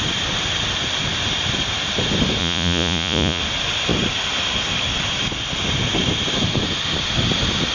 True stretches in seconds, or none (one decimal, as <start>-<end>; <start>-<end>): 0.0-2.4; 3.4-7.7